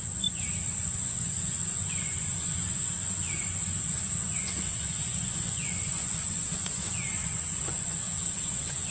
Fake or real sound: fake